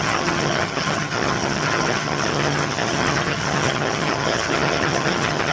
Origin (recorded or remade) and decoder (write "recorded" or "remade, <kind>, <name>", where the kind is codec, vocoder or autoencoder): remade, vocoder, HiFi-GAN